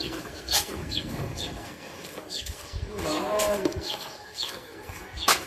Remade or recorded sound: remade